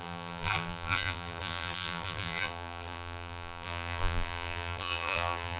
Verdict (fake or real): fake